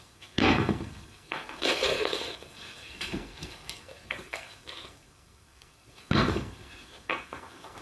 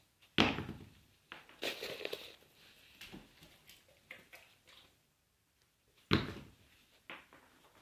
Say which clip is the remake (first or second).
first